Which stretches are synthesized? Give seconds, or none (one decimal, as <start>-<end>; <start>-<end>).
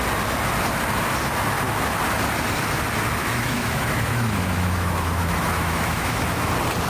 3.2-6.5